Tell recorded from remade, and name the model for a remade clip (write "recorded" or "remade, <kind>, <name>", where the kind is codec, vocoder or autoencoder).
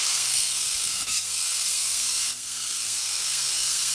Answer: remade, codec, SNAC